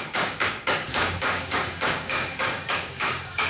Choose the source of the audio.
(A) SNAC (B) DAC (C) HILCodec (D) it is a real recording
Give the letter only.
B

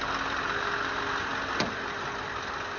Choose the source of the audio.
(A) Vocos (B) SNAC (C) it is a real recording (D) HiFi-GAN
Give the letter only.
C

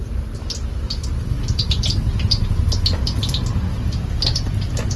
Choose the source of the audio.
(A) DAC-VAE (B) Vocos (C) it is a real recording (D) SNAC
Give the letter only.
C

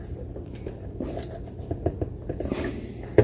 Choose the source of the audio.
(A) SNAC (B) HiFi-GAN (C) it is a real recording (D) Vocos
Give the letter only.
C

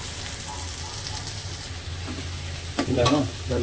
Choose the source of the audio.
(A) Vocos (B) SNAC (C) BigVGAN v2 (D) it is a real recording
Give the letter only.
D